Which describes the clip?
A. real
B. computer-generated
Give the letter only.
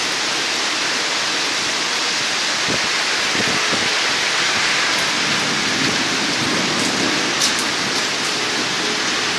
A